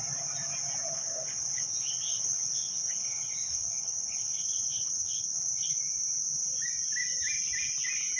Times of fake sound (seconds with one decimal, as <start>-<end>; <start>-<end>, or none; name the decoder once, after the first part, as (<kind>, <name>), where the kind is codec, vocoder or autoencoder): 0.9-5.8 (codec, HILCodec)